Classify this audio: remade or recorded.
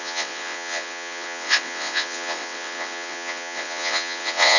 remade